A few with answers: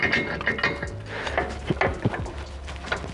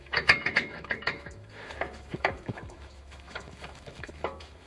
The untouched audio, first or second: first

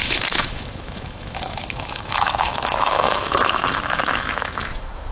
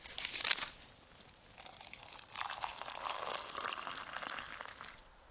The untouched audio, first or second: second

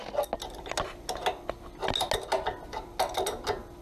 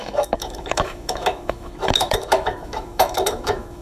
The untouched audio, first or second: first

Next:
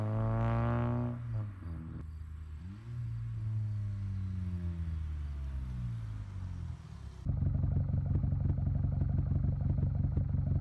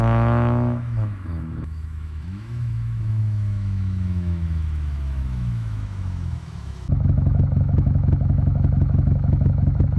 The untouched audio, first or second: first